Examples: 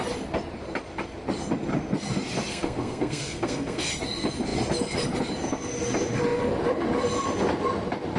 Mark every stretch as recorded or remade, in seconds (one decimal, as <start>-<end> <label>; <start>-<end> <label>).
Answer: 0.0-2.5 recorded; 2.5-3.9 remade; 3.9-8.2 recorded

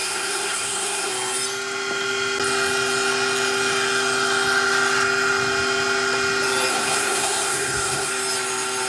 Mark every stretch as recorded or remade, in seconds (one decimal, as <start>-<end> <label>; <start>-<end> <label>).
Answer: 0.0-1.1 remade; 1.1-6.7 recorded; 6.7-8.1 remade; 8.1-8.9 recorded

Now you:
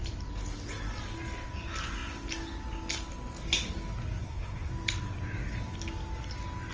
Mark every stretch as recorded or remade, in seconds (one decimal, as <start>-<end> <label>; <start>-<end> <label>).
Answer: 0.0-4.2 recorded; 4.2-4.7 remade; 4.7-6.7 recorded

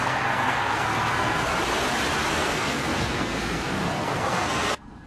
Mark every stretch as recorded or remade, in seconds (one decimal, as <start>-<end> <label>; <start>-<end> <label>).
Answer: 0.0-1.5 remade; 1.5-2.3 recorded; 2.3-5.1 remade

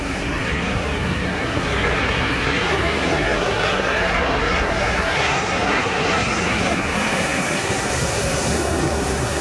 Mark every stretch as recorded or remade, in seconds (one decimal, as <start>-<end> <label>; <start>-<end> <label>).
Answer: 0.0-9.4 remade

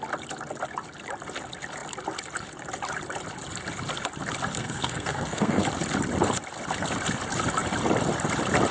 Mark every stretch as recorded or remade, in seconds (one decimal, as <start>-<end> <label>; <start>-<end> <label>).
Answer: 0.0-4.6 recorded; 4.6-5.6 remade; 5.6-8.7 recorded